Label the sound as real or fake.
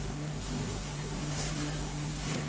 fake